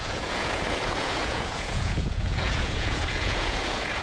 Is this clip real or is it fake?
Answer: fake